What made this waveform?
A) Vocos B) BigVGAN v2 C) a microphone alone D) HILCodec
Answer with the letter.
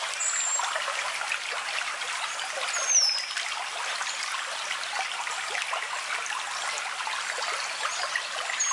C